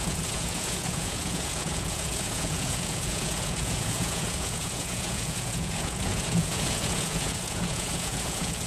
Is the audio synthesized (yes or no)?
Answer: yes